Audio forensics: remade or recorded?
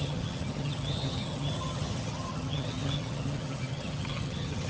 remade